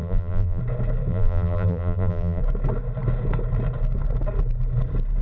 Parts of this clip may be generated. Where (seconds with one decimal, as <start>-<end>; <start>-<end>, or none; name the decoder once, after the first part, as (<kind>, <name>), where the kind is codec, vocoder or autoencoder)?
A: 0.0-0.6 (vocoder, BigVGAN v2); 1.1-2.4